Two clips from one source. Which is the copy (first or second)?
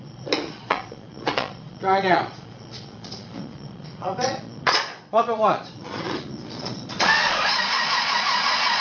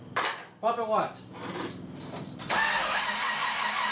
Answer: first